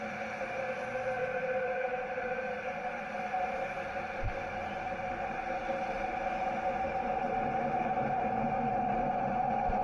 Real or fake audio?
fake